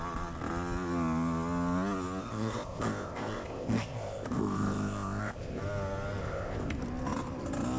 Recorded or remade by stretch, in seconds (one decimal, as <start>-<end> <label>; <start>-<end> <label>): 0.0-2.2 recorded; 2.2-5.6 remade; 5.6-6.2 recorded; 6.2-6.8 remade; 6.8-7.8 recorded